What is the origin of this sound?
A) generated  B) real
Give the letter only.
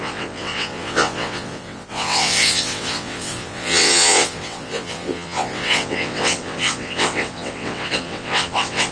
A